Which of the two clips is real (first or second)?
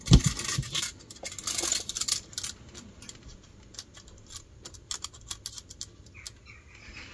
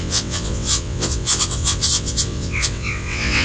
first